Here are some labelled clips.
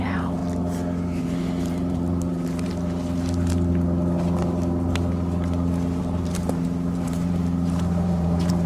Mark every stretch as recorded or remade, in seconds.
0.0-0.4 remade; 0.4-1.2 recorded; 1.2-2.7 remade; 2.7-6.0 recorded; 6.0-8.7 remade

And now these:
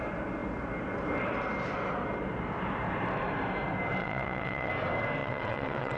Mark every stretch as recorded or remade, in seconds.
0.0-4.0 recorded; 4.0-4.7 remade; 4.7-5.2 recorded; 5.2-6.0 remade

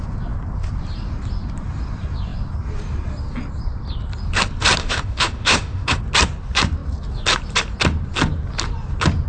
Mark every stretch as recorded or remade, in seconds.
0.0-4.8 recorded; 4.8-6.0 remade; 6.0-9.3 recorded